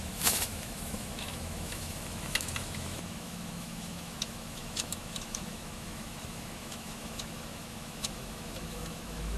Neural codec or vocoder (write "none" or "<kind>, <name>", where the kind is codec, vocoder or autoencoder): autoencoder, DAC-VAE